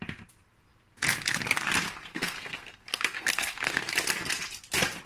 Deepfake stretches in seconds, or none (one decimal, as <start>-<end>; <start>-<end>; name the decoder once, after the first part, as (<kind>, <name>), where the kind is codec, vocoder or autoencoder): 2.1-3.9 (codec, SNAC)